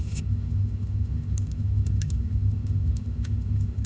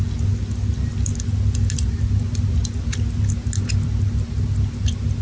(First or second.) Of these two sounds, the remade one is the first